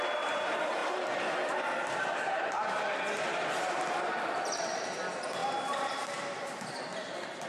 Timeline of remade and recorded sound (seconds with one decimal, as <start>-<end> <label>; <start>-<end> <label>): 0.0-7.5 recorded